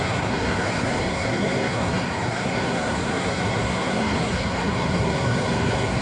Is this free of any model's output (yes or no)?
no